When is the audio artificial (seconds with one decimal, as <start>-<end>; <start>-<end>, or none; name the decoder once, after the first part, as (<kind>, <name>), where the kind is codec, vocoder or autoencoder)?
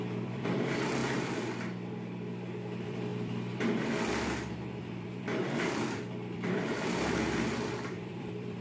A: 0.0-1.0 (vocoder, BigVGAN v2); 2.3-8.6